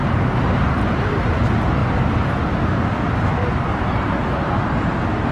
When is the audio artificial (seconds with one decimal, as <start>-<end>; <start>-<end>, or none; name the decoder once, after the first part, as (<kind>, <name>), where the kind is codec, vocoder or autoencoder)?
0.0-1.8 (vocoder, BigVGAN v2)